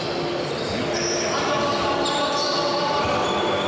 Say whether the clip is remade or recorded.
recorded